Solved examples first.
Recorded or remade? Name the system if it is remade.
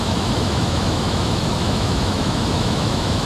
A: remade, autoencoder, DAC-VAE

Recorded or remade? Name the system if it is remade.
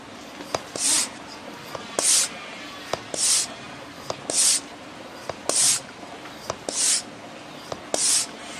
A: recorded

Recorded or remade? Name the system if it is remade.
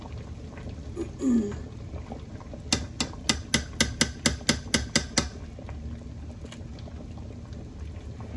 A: recorded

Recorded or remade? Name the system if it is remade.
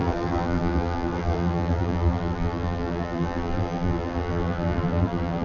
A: remade, vocoder, BigVGAN v2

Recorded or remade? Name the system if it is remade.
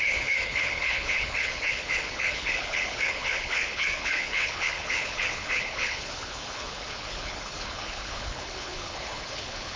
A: remade, codec, HILCodec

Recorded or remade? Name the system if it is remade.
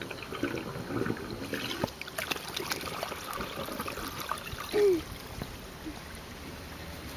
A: recorded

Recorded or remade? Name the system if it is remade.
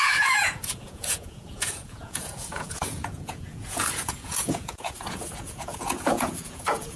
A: remade, vocoder, Vocos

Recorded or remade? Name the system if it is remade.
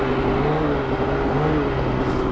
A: recorded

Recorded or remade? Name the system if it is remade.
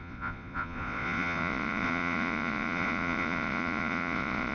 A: remade, vocoder, Vocos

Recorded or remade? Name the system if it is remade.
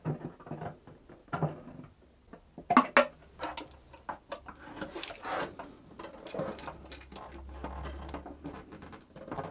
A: recorded